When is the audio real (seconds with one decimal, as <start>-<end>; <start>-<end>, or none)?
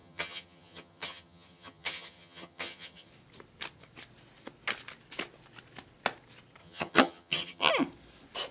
3.1-6.6; 7.7-8.5